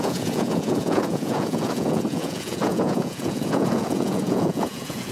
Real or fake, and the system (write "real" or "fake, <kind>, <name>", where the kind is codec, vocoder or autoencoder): fake, vocoder, Vocos